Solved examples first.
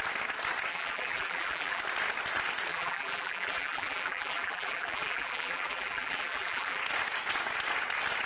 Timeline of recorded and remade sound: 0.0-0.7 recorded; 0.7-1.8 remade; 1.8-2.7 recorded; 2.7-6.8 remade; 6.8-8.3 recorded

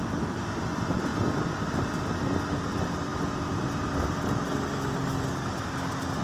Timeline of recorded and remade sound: 0.0-6.2 recorded